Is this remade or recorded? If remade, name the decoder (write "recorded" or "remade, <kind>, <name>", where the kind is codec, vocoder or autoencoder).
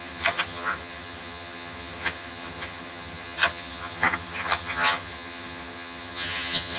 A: remade, vocoder, HiFi-GAN